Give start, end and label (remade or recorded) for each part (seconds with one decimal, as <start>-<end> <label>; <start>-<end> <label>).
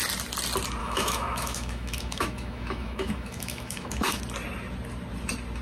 0.0-0.8 recorded; 0.8-4.2 remade; 4.2-5.6 recorded